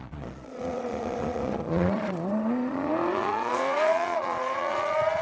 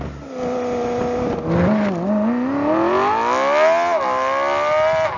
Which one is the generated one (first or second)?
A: first